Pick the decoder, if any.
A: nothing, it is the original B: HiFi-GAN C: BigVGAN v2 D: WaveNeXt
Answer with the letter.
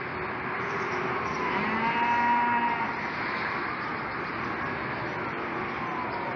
A